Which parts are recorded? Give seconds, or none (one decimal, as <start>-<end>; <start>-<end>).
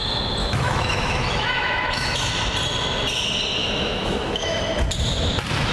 0.0-0.4; 2.3-3.6; 4.6-5.7